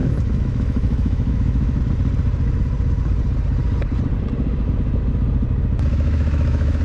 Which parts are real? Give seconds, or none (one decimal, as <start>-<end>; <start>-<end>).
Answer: 1.8-5.9